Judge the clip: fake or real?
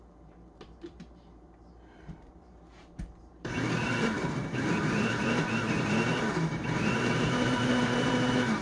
fake